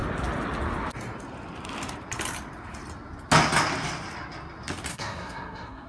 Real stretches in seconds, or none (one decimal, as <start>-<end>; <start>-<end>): 0.0-4.9